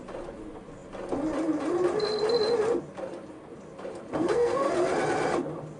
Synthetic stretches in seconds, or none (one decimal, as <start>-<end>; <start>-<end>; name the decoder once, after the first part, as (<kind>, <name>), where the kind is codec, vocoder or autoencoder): 4.2-4.7 (codec, SNAC)